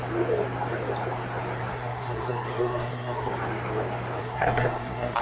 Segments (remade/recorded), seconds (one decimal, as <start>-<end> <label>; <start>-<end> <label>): 0.0-1.7 recorded; 1.7-3.3 remade; 3.3-4.2 recorded; 4.2-5.2 remade